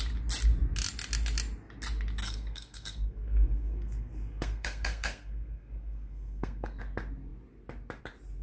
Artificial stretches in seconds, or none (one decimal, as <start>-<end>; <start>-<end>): 2.2-6.8